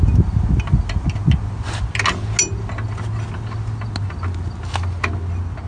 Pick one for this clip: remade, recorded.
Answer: recorded